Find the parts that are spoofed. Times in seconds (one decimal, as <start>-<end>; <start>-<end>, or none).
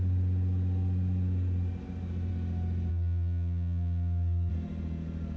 2.9-4.5